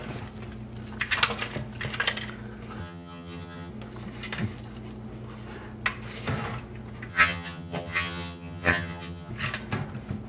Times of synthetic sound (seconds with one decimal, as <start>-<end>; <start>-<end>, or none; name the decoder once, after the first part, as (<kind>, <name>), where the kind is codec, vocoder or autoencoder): 2.8-3.7 (vocoder, HiFi-GAN); 7.1-9.3